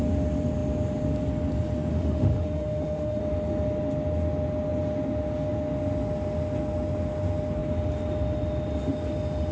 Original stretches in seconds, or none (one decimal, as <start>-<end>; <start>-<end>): 0.0-1.9; 3.2-9.5